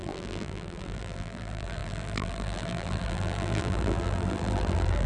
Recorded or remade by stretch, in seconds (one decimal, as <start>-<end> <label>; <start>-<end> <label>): 0.0-5.1 remade